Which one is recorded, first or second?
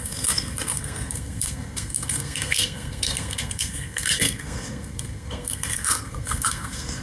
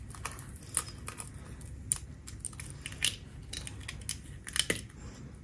second